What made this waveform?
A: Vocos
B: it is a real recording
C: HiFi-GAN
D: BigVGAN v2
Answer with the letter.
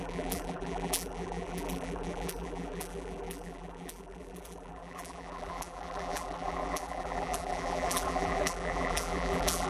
D